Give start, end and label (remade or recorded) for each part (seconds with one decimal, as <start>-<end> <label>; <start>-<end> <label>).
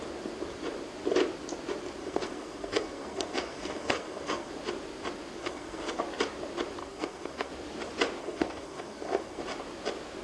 0.0-2.0 recorded; 2.0-4.5 remade; 4.5-5.4 recorded; 5.4-6.0 remade; 6.0-6.8 recorded; 6.8-7.5 remade; 7.5-8.2 recorded; 8.2-9.4 remade; 9.4-10.2 recorded